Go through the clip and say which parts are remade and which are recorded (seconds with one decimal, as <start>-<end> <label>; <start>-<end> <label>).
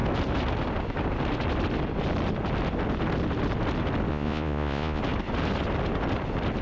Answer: 0.0-4.1 recorded; 4.1-5.0 remade; 5.0-6.6 recorded